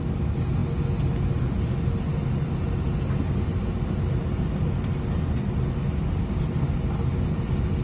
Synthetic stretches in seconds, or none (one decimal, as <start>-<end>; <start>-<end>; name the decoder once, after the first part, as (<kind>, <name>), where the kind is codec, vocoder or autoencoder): none